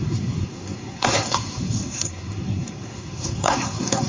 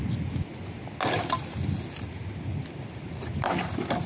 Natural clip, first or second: second